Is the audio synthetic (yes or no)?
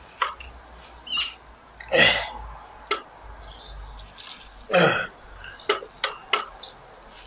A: no